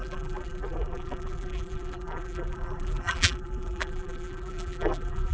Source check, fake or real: fake